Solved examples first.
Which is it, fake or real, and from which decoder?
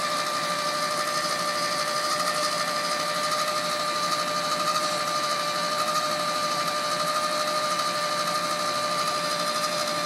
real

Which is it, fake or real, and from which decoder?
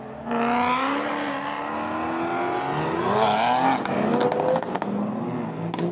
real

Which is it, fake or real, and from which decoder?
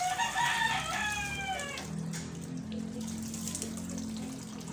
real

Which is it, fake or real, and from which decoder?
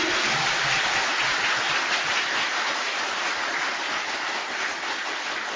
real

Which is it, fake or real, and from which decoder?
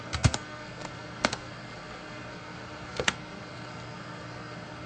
fake, codec, SNAC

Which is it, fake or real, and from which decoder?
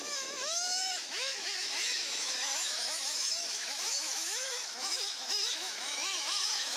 fake, autoencoder, DAC-VAE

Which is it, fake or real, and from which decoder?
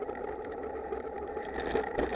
fake, vocoder, BigVGAN v2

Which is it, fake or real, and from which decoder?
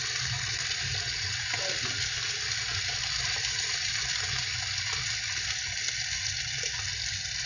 real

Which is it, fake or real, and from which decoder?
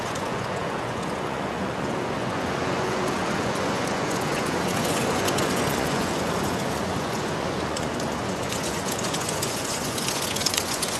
fake, vocoder, Vocos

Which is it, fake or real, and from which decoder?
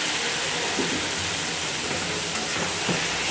real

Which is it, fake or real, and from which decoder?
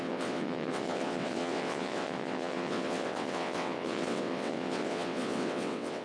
fake, vocoder, WaveNeXt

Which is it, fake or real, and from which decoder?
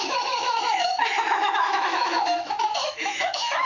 fake, autoencoder, DAC-VAE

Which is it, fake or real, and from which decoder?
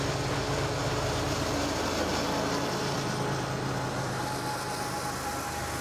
real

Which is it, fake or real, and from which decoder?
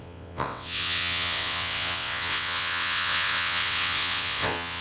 fake, vocoder, WaveNeXt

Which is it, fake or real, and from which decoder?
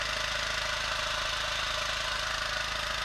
real